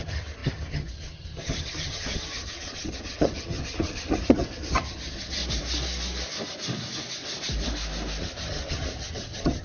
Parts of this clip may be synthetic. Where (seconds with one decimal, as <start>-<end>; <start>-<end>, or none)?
0.0-5.4; 8.2-9.6